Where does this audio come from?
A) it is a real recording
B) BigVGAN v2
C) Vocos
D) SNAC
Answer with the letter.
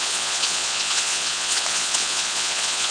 C